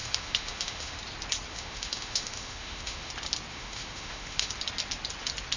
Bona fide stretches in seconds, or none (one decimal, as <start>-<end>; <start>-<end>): 1.0-1.5; 3.1-3.5; 4.5-5.6